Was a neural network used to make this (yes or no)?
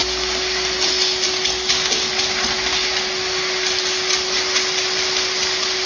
no